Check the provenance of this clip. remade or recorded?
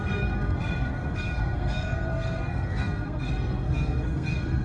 remade